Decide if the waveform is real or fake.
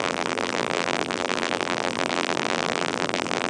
fake